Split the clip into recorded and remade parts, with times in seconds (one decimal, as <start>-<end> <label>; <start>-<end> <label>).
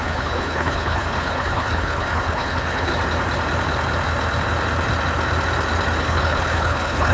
0.0-2.9 remade; 2.9-6.0 recorded; 6.0-7.1 remade